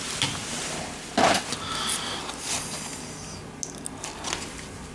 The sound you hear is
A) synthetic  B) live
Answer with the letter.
B